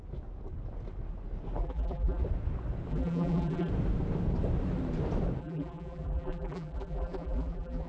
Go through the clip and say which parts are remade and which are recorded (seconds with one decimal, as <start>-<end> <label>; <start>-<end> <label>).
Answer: 0.0-1.6 recorded; 1.6-2.2 remade; 2.2-2.9 recorded; 2.9-3.7 remade; 3.7-5.4 recorded; 5.4-7.9 remade